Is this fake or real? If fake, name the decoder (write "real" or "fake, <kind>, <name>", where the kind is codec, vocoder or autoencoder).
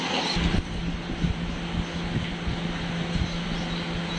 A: real